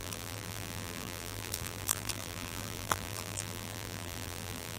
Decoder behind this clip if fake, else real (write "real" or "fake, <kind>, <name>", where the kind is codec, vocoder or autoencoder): fake, vocoder, BigVGAN v2